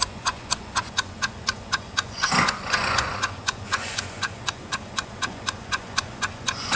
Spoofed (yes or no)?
yes